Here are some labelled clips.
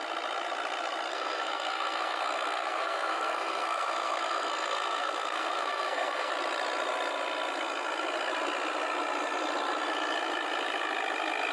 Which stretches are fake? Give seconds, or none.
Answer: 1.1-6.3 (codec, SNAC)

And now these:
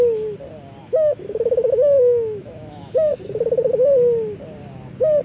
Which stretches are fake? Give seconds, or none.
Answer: 0.8-3.1 (autoencoder, DAC-VAE)

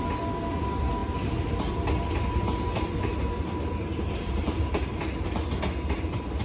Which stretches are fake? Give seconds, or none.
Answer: 3.9-4.9 (vocoder, BigVGAN v2)

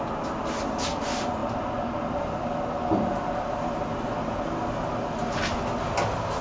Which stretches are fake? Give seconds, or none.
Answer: none